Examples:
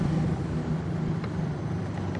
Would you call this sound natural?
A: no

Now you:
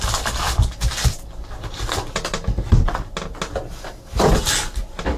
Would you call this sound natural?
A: yes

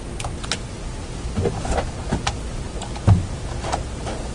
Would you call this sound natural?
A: yes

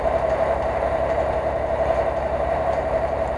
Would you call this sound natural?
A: no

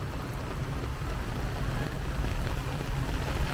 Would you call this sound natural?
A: yes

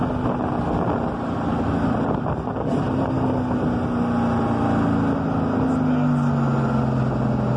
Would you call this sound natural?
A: yes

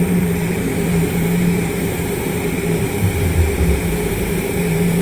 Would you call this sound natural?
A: no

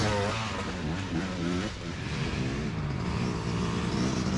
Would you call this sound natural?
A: yes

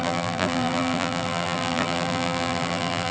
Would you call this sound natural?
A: no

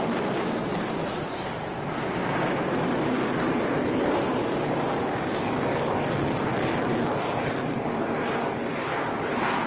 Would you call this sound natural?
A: no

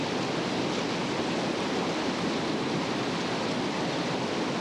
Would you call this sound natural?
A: yes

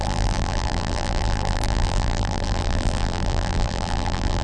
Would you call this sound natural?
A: no